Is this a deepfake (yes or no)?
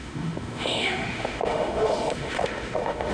yes